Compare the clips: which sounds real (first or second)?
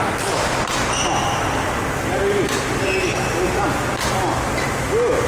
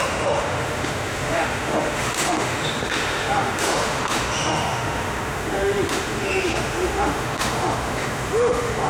first